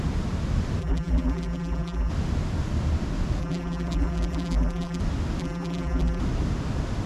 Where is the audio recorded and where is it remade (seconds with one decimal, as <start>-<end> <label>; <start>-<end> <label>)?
0.0-0.8 recorded; 0.8-2.1 remade; 2.1-3.4 recorded; 3.4-5.0 remade; 5.0-5.4 recorded; 5.4-6.2 remade; 6.2-7.1 recorded